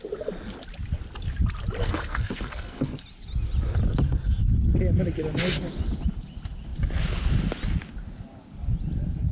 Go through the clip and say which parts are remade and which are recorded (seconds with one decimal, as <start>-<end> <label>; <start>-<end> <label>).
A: 0.0-1.8 recorded; 1.8-3.0 remade; 3.0-9.3 recorded

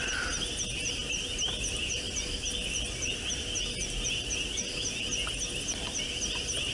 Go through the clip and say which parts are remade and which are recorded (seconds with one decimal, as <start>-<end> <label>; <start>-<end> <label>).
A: 0.0-6.7 recorded

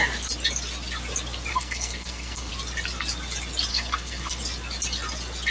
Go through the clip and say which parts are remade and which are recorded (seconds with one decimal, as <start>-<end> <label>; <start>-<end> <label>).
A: 0.0-1.5 recorded; 1.5-2.5 remade; 2.5-3.7 recorded; 3.7-4.4 remade; 4.4-5.5 recorded